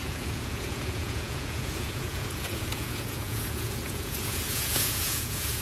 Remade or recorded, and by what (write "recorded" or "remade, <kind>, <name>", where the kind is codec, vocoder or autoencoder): remade, vocoder, Vocos